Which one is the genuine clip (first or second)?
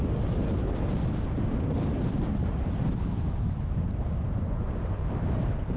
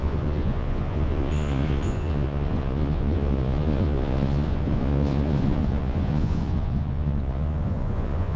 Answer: first